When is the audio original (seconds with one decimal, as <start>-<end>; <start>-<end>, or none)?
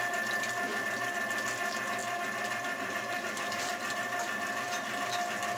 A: 0.0-2.0; 5.1-5.6